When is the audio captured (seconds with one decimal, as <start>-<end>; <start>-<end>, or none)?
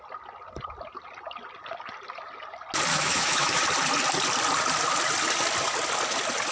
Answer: 0.0-2.9; 3.6-6.5